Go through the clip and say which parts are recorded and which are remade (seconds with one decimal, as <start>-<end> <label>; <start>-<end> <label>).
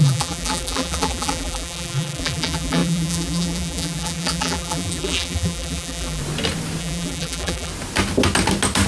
0.0-6.2 remade; 6.2-6.8 recorded; 6.8-7.7 remade; 7.7-8.9 recorded